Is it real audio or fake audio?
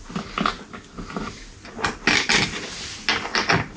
real